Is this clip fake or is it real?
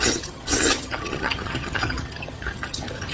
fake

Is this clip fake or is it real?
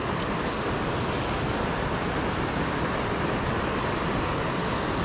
real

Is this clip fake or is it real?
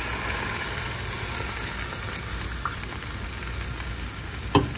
real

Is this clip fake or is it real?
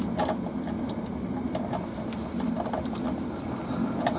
real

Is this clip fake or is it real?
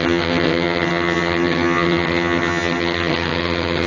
fake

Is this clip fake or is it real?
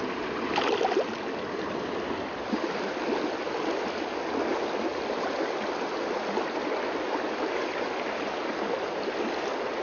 real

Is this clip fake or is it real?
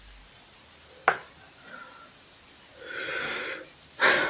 real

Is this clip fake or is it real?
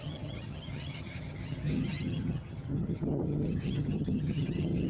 fake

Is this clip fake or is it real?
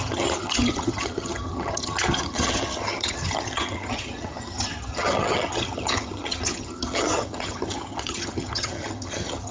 fake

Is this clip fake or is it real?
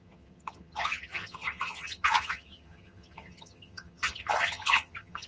fake